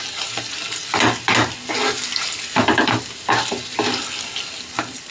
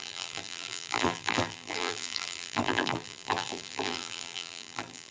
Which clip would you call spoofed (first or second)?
second